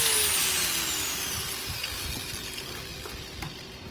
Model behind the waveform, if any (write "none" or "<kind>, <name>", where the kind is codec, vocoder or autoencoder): none